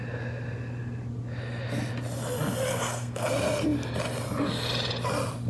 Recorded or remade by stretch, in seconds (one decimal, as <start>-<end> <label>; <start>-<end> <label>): 0.0-2.7 recorded; 2.7-3.3 remade; 3.3-5.5 recorded